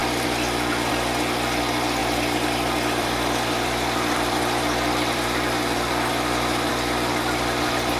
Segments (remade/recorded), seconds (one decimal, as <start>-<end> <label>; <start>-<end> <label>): 0.0-2.0 recorded; 2.0-6.7 remade; 6.7-8.0 recorded